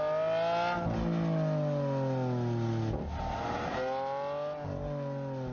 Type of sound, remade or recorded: recorded